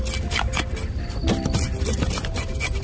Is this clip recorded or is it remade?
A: recorded